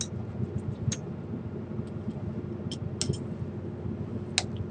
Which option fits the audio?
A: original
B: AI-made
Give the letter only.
A